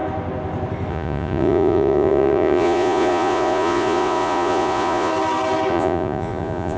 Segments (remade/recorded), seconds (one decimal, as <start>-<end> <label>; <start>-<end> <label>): 0.0-0.9 recorded; 0.9-5.1 remade; 5.1-5.7 recorded; 5.7-6.8 remade